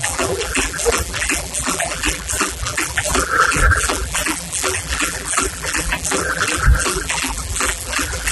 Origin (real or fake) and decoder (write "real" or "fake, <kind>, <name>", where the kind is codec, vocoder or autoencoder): fake, vocoder, BigVGAN v2